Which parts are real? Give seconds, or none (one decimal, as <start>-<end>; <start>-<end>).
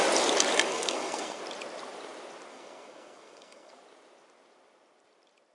0.0-0.7; 1.4-2.5; 3.8-5.5